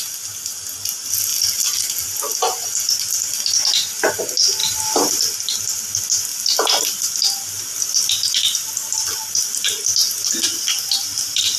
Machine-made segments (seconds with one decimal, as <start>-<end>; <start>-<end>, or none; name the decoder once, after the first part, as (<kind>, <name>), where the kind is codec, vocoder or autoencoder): 4.6-5.2 (vocoder, BigVGAN v2)